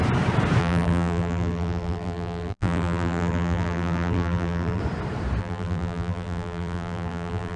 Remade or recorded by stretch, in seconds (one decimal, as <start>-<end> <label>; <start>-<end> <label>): 0.0-0.6 recorded; 0.6-4.8 remade; 4.8-5.4 recorded; 5.4-7.6 remade